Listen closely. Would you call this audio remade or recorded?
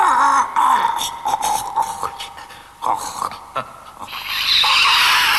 recorded